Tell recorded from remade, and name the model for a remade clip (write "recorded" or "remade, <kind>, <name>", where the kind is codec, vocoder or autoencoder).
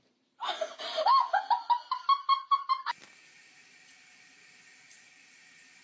recorded